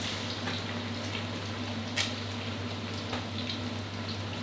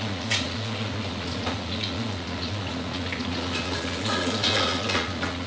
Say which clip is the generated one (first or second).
second